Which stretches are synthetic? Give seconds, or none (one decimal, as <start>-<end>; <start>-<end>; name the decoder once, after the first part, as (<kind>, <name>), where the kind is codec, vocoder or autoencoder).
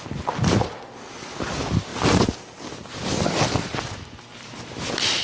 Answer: none